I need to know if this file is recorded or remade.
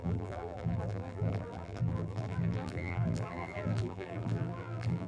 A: remade